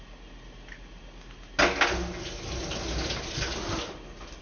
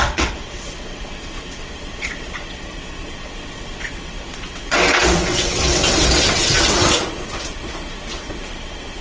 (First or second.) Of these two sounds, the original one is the first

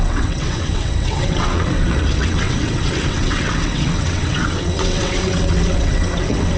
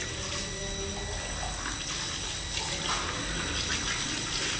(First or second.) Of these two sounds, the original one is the second